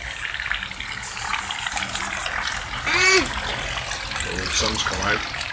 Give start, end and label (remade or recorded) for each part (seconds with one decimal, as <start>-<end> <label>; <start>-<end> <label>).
0.0-5.5 recorded